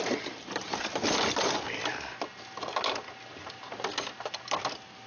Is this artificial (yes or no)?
no